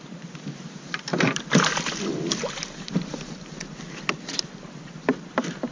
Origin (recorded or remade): remade